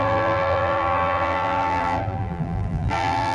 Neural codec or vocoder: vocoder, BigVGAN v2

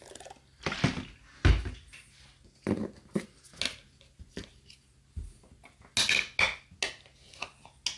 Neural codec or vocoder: none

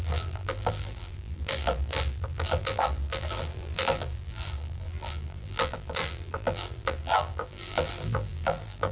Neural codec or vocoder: vocoder, BigVGAN v2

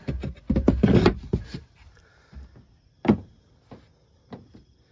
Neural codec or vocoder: none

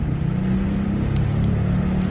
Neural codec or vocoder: none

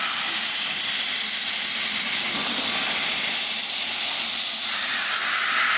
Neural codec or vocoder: vocoder, BigVGAN v2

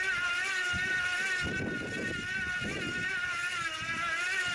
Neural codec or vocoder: none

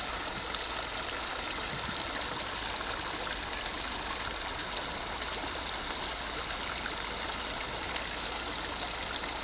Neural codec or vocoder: none